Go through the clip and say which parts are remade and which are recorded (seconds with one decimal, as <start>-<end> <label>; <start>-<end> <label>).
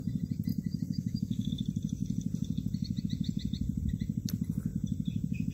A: 0.0-0.5 recorded; 0.5-1.5 remade; 1.5-5.5 recorded